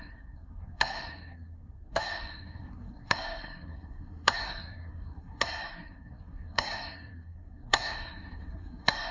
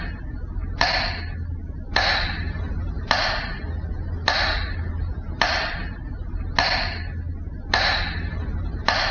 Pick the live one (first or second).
second